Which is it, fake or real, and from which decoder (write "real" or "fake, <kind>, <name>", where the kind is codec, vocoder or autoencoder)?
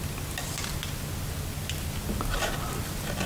real